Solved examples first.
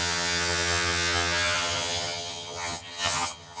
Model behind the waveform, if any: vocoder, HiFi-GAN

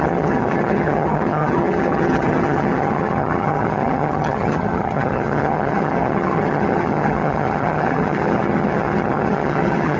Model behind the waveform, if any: vocoder, HiFi-GAN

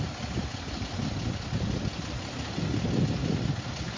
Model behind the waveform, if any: none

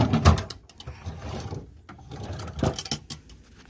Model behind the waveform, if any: none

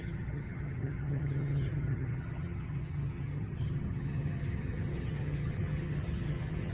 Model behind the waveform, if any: vocoder, HiFi-GAN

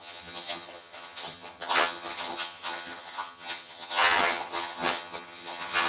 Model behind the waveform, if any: vocoder, HiFi-GAN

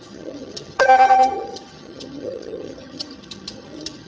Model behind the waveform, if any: vocoder, HiFi-GAN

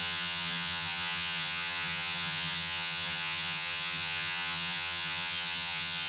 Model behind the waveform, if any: vocoder, HiFi-GAN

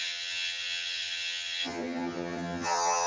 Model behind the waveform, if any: vocoder, HiFi-GAN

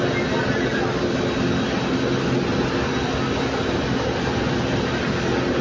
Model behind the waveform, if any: none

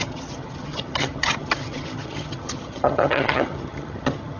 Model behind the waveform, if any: vocoder, HiFi-GAN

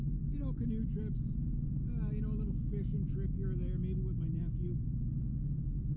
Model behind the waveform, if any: none